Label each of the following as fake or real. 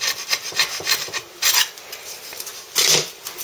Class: real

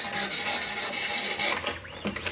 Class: real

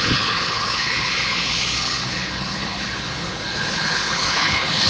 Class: fake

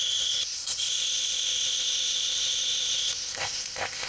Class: fake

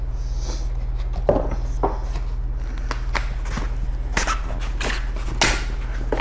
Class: real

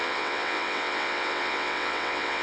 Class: fake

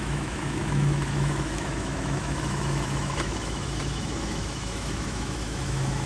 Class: fake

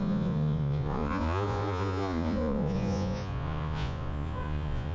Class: fake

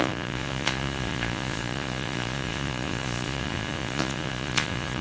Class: fake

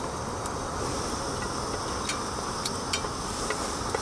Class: real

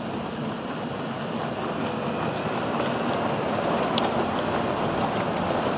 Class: real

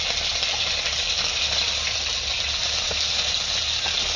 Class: real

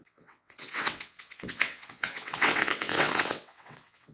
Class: fake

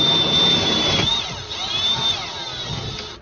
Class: real